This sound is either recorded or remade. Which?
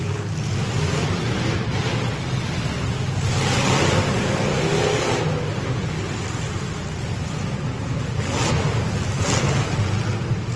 recorded